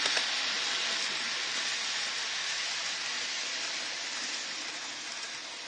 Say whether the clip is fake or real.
real